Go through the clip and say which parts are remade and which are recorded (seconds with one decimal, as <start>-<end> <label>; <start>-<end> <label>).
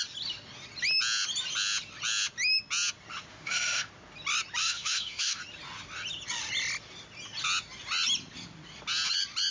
0.0-3.3 recorded; 3.3-3.9 remade; 3.9-4.6 recorded; 4.6-5.4 remade; 5.4-9.5 recorded